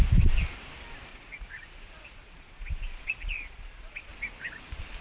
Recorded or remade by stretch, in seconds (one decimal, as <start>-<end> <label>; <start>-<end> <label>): 0.0-1.1 recorded; 1.1-4.1 remade; 4.1-5.0 recorded

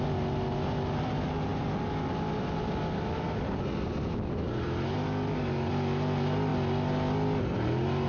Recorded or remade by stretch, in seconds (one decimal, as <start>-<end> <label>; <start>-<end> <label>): 0.0-8.1 recorded

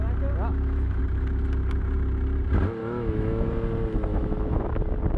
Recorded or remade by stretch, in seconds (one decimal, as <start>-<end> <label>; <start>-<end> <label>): 0.0-0.5 recorded; 0.5-1.0 remade; 1.0-2.8 recorded; 2.8-3.5 remade; 3.5-4.1 recorded; 4.1-4.7 remade; 4.7-5.2 recorded

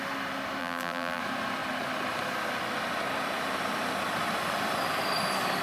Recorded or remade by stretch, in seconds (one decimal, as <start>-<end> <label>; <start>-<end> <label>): 0.0-0.6 recorded; 0.6-1.2 remade; 1.2-5.6 recorded